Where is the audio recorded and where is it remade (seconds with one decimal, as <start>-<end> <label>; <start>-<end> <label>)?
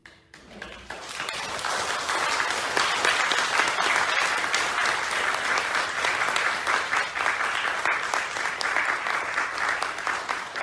0.0-1.5 remade; 1.5-10.6 recorded